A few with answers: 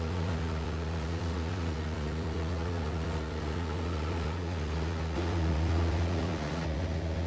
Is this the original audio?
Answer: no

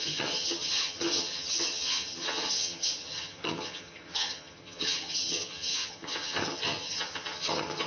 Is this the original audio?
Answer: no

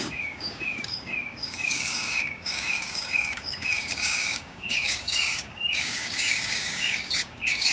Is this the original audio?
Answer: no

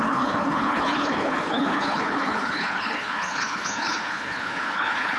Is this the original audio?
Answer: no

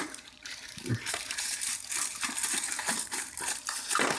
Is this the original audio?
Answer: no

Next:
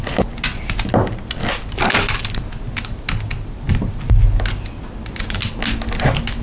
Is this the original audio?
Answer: yes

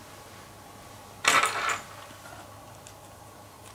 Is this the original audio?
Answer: yes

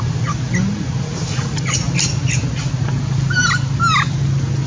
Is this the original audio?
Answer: yes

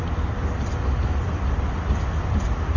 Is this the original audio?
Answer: yes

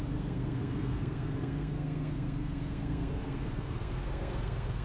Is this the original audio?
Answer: no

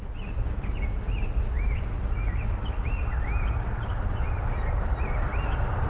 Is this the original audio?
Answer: yes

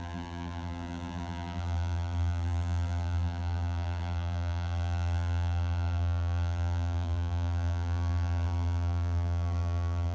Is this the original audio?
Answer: no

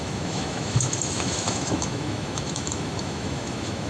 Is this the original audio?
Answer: no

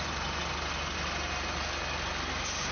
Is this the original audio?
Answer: yes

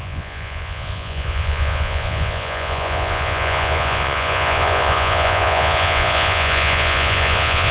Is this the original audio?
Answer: no